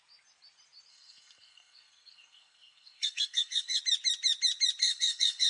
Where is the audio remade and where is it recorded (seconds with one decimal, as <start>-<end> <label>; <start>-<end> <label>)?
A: 0.0-0.9 recorded; 0.9-3.8 remade; 3.8-4.8 recorded; 4.8-5.5 remade